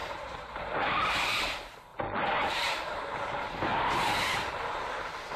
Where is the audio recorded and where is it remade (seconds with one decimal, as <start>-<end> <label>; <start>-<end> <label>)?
0.0-1.9 remade; 1.9-2.5 recorded; 2.5-3.7 remade; 3.7-4.7 recorded; 4.7-5.4 remade